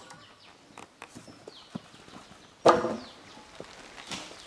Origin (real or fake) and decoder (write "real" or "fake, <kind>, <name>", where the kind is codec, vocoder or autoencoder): real